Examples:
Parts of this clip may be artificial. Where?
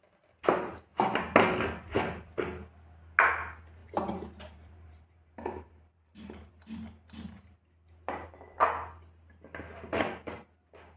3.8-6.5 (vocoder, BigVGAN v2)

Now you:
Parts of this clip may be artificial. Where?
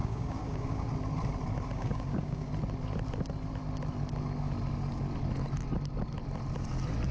0.0-0.9 (codec, DAC); 1.7-2.5